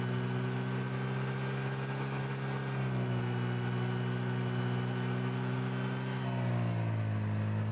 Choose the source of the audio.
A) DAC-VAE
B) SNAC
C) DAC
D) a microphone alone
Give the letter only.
D